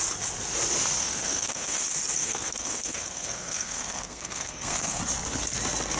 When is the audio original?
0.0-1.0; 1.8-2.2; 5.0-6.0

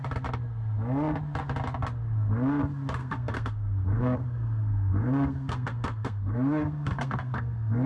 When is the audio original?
0.0-3.0

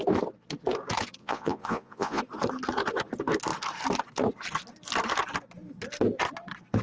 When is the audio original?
0.0-1.2; 2.2-6.8

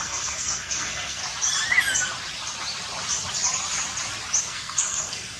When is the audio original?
1.2-4.4

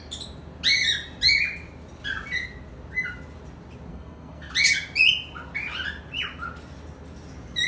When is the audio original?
0.0-3.9; 4.5-7.7

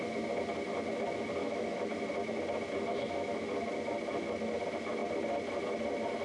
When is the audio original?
0.0-1.4; 2.0-2.9; 3.5-6.2

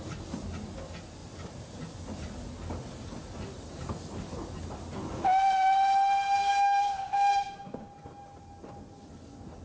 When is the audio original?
0.0-6.4; 7.9-9.6

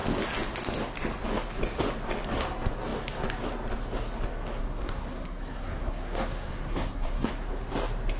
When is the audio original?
0.0-4.6; 7.3-8.2